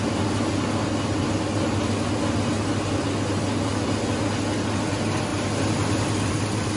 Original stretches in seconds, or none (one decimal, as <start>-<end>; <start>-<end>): 0.0-6.8